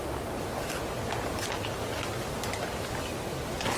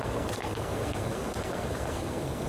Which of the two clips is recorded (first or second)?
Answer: first